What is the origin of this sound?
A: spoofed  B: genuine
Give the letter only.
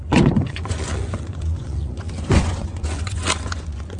A